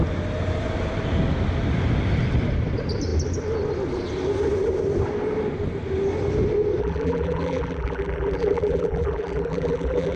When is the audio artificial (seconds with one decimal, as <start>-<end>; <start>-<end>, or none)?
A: 6.8-10.2